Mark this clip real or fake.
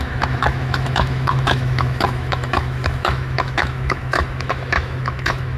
fake